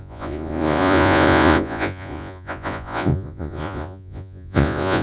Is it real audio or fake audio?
fake